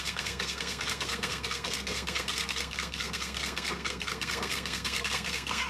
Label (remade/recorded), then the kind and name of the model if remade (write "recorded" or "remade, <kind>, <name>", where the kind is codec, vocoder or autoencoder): remade, codec, SNAC